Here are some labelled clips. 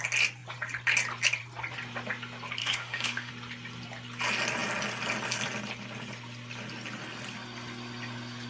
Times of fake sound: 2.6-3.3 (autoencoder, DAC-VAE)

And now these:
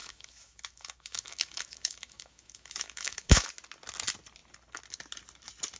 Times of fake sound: 0.0-3.5 (autoencoder, DAC-VAE)

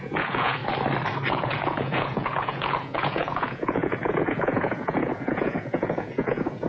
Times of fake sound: 0.0-0.6 (vocoder, Vocos); 1.3-6.7

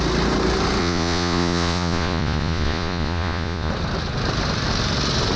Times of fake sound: 0.8-3.7 (vocoder, Vocos)

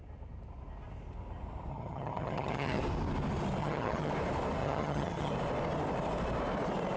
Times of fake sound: 1.7-2.8 (vocoder, HiFi-GAN); 3.6-4.1; 4.6-5.3

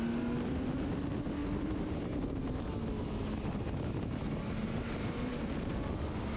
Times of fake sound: 1.4-2.5 (vocoder, BigVGAN v2); 3.2-5.3

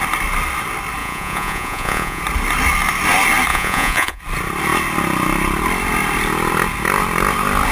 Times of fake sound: 1.0-2.2 (vocoder, Vocos); 3.5-4.2

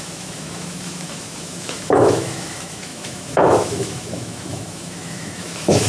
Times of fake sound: 0.0-5.9 (autoencoder, DAC-VAE)